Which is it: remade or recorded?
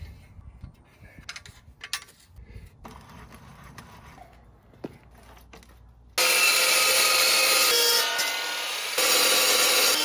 recorded